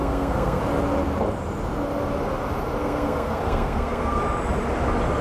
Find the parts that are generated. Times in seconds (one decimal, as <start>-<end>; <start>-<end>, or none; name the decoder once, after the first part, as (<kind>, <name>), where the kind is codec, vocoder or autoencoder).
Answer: 0.0-0.6 (codec, SNAC); 2.8-4.2